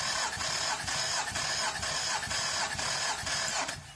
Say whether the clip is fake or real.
real